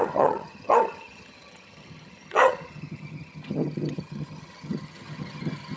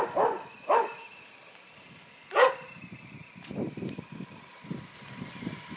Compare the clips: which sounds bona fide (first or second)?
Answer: second